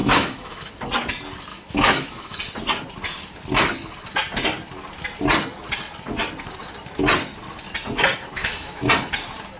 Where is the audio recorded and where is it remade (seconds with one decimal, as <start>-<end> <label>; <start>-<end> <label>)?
0.0-0.7 remade; 0.7-1.5 recorded; 1.5-2.4 remade; 2.4-8.4 recorded; 8.4-8.9 remade; 8.9-9.6 recorded